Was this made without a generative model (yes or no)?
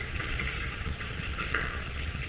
no